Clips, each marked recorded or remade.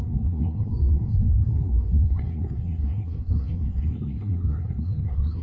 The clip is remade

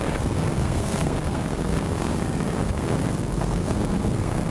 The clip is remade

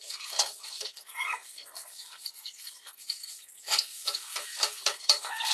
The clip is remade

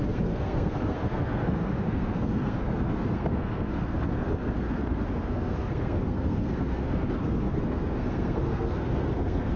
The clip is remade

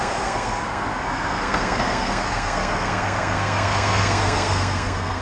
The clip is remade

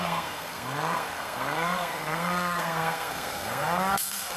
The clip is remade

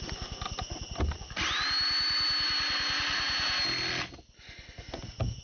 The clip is recorded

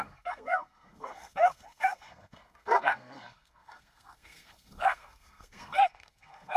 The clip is remade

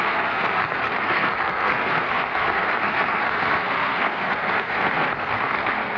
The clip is remade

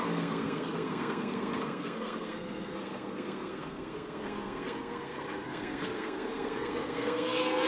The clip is remade